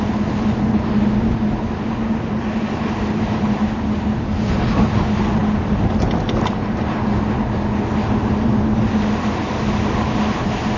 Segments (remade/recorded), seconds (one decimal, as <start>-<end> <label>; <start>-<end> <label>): 0.0-10.8 recorded